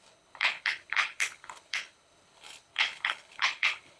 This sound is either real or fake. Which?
fake